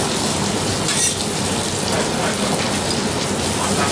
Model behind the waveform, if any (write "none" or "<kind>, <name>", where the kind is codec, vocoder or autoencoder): none